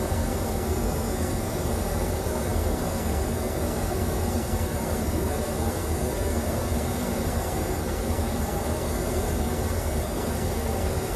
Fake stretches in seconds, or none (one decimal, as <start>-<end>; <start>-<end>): 0.0-11.2